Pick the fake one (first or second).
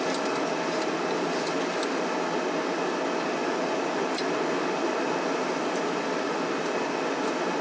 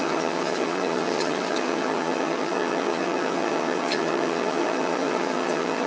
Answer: second